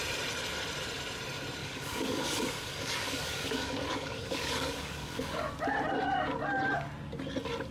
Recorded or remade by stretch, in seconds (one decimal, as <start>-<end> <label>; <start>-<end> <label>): 0.0-1.6 recorded; 1.6-5.5 remade; 5.5-7.7 recorded